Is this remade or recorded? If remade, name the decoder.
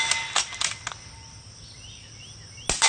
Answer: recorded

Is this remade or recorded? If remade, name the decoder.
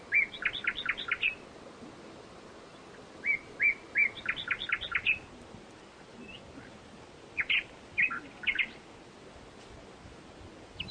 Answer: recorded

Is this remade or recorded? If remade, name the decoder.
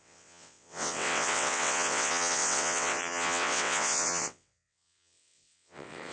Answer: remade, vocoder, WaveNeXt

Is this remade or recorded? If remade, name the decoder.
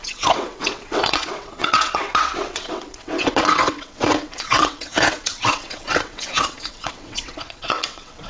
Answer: remade, vocoder, WaveNeXt